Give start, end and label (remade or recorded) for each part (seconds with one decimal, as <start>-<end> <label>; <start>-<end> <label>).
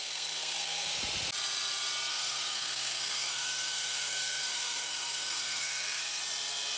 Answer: 0.0-0.9 remade; 0.9-2.1 recorded; 2.1-6.2 remade; 6.2-6.8 recorded